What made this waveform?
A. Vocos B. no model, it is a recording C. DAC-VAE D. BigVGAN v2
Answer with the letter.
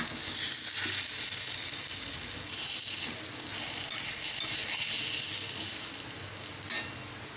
B